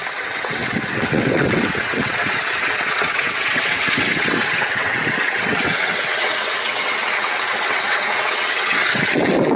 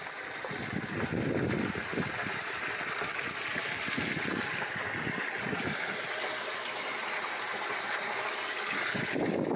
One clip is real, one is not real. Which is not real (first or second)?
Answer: first